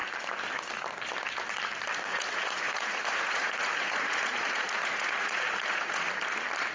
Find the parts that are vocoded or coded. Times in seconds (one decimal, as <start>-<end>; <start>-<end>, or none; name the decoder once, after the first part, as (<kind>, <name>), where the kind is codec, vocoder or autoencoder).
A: 2.1-6.1 (vocoder, Vocos)